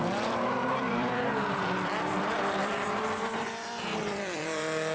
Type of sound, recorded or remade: remade